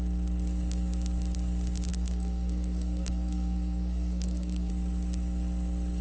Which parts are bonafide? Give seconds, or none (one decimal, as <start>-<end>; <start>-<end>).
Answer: 0.0-1.9; 4.7-6.0